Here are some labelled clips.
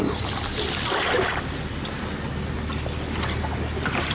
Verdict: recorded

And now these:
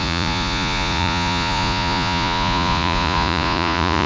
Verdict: remade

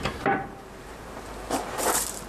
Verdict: remade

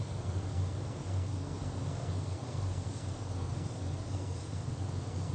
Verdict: remade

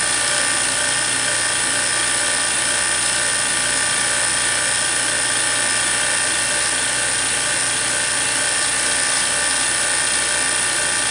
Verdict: recorded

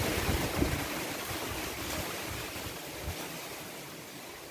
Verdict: recorded